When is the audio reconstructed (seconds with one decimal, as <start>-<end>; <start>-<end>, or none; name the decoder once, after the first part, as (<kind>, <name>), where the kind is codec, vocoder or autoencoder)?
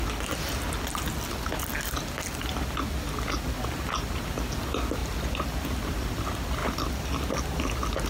none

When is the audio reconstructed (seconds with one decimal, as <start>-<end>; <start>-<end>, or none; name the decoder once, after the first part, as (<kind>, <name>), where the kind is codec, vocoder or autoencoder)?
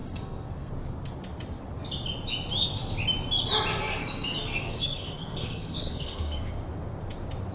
0.0-0.7 (codec, SNAC); 3.7-6.5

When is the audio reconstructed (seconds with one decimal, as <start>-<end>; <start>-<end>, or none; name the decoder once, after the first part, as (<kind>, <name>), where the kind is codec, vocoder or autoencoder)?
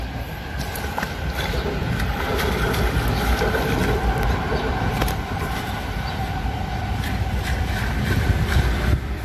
0.0-2.3 (vocoder, BigVGAN v2); 4.5-9.2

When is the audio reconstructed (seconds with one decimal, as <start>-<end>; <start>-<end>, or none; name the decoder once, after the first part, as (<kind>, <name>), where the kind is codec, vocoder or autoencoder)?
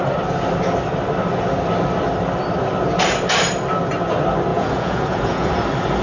4.5-5.5 (vocoder, Vocos)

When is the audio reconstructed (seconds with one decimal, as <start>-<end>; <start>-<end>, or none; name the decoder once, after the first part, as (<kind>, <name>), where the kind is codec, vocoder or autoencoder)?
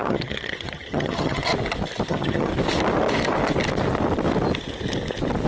0.0-1.5 (vocoder, HiFi-GAN); 2.1-2.5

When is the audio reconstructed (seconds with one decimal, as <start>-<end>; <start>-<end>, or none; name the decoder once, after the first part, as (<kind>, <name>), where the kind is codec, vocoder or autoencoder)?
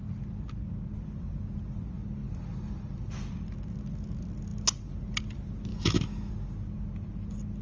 5.7-6.3 (autoencoder, DAC-VAE)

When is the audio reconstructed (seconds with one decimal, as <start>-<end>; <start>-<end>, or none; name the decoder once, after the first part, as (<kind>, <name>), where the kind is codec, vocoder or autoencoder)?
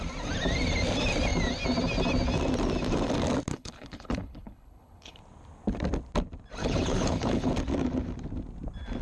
3.5-5.2 (codec, HILCodec); 6.6-7.5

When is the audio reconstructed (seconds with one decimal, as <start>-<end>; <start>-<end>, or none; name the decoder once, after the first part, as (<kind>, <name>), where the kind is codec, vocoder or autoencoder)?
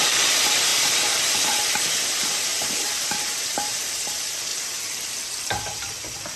0.0-4.5 (vocoder, BigVGAN v2); 5.5-6.4